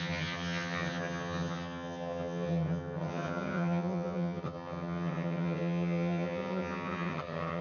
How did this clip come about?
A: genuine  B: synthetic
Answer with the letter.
B